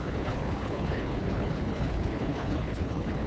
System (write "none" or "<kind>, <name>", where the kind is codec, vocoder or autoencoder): codec, HILCodec